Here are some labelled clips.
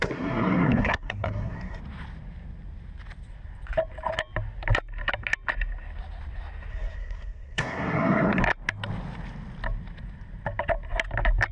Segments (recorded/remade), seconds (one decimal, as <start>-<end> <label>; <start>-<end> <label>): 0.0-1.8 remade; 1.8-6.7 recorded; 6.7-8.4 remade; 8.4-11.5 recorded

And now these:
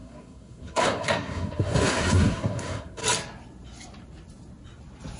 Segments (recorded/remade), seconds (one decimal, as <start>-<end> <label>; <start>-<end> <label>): 0.0-3.0 remade; 3.0-5.2 recorded

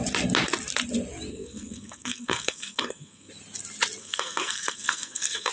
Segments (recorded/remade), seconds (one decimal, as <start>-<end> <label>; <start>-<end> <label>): 0.0-1.3 recorded; 1.3-3.3 remade; 3.3-4.0 recorded; 4.0-5.5 remade

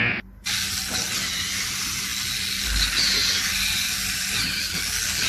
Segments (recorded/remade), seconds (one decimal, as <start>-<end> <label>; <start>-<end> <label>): 0.0-5.3 recorded

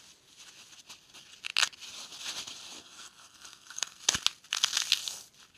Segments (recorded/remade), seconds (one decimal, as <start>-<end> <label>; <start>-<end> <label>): 0.0-2.8 recorded; 2.8-4.0 remade; 4.0-5.6 recorded

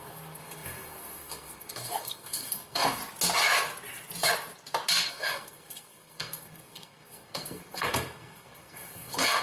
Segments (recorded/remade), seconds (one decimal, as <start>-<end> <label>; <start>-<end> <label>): 0.0-3.0 remade; 3.0-5.1 recorded; 5.1-9.4 remade

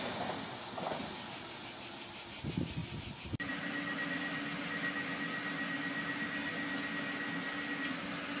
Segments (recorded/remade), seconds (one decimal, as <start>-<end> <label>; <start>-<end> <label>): 0.0-8.4 recorded

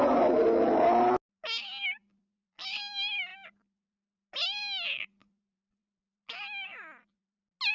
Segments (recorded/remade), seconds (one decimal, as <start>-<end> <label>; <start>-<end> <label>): 0.0-7.7 recorded